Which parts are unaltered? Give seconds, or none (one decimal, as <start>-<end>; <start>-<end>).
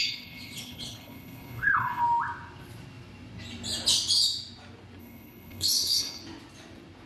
2.0-5.0; 6.2-7.1